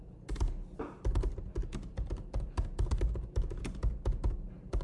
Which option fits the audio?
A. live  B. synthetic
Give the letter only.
A